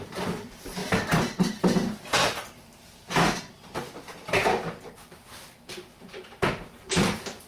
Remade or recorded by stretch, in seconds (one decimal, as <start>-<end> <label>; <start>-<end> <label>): 0.0-7.5 remade

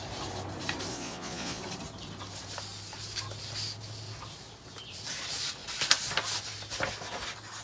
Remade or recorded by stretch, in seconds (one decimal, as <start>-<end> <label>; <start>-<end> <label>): 0.0-0.9 recorded; 0.9-1.6 remade; 1.6-7.6 recorded